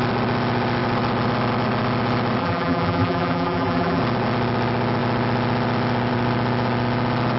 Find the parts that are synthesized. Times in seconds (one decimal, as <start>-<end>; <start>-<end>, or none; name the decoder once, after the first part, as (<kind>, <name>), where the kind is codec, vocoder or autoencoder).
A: 2.4-4.0 (vocoder, BigVGAN v2)